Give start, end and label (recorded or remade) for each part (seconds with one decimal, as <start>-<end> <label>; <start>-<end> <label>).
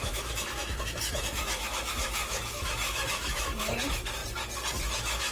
0.0-4.2 remade; 4.2-4.7 recorded; 4.7-5.3 remade